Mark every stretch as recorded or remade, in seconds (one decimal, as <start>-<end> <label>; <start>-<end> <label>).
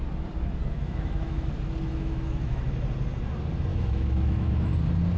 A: 0.0-0.6 recorded; 0.6-1.5 remade; 1.5-1.9 recorded; 1.9-2.6 remade; 2.6-3.7 recorded; 3.7-4.7 remade; 4.7-5.2 recorded